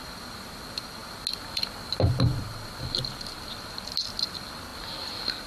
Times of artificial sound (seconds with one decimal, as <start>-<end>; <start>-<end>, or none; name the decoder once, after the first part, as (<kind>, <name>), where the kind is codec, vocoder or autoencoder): none